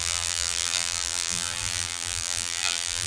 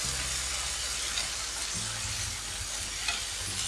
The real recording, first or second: second